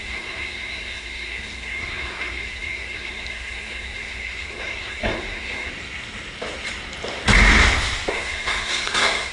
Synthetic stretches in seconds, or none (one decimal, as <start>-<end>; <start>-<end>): 0.0-5.7; 8.1-9.3

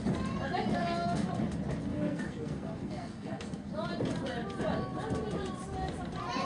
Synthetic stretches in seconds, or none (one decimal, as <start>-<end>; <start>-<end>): 0.8-1.3; 1.9-3.7

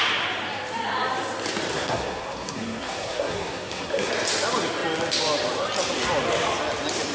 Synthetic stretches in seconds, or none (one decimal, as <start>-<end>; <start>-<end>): 1.7-4.1

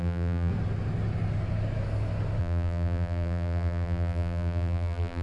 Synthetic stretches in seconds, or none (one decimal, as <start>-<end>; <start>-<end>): 0.0-0.5; 2.4-5.2

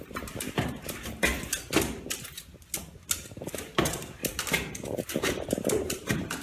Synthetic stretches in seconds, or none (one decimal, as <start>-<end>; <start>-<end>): 0.0-1.3; 3.5-4.2; 4.9-6.4